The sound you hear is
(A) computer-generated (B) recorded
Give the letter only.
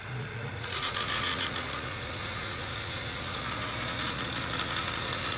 A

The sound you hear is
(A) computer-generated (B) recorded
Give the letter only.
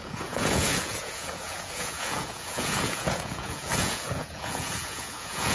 A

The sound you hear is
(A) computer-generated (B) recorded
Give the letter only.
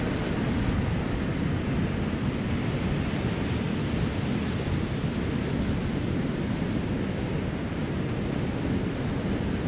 B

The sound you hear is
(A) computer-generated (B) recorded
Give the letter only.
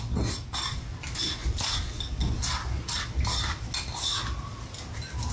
B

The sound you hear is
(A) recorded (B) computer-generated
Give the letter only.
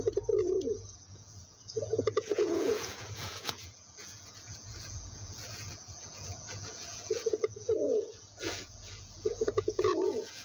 B